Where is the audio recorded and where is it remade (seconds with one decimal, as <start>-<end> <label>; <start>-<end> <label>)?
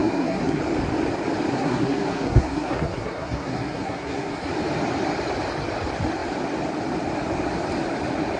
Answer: 0.0-0.6 remade; 0.6-1.5 recorded; 1.5-4.5 remade; 4.5-8.4 recorded